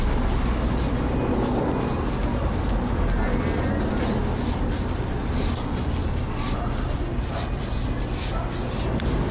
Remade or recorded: recorded